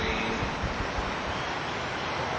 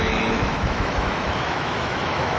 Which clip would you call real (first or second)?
first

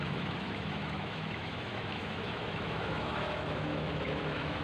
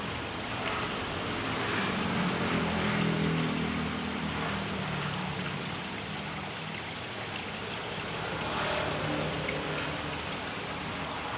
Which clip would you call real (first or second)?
second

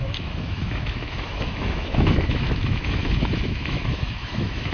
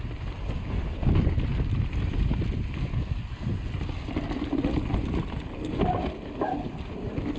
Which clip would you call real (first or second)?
second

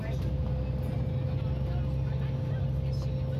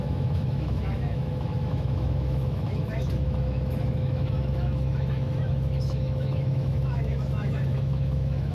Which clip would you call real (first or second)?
first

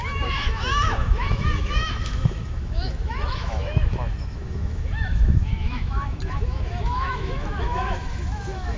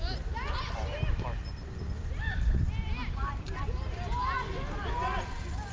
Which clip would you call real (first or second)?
second